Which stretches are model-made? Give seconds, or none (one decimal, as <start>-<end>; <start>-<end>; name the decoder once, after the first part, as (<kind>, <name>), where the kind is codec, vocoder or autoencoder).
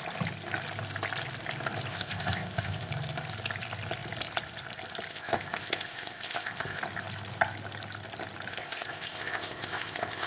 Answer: 1.9-2.9 (codec, ZipCodec); 5.1-6.8; 8.5-10.3